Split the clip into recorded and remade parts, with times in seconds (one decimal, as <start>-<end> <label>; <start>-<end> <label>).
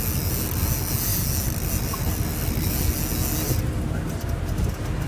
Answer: 0.0-5.1 recorded